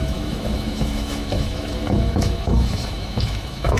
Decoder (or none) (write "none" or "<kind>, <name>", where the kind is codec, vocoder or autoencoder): autoencoder, DAC-VAE